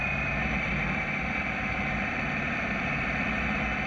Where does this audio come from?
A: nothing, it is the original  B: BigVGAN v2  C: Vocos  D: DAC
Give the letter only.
B